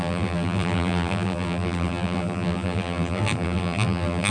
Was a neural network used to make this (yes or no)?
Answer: yes